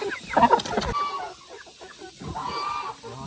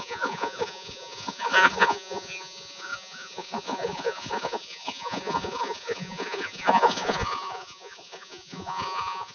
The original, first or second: first